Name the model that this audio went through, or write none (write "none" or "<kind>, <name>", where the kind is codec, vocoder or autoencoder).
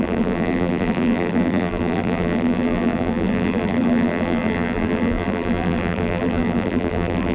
vocoder, BigVGAN v2